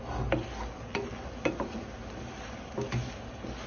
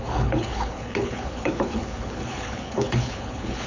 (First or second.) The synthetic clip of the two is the second